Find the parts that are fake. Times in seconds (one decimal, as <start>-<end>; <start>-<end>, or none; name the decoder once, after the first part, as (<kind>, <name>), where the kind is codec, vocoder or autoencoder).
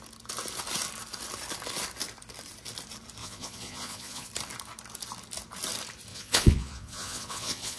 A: 3.2-4.3 (vocoder, Vocos); 6.1-7.8